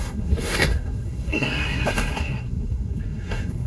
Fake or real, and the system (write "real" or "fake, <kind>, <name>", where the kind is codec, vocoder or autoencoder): fake, codec, SNAC